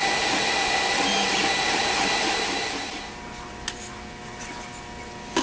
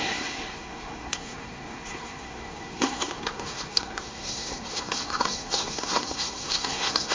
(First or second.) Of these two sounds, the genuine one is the first